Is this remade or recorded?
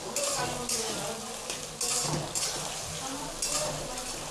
recorded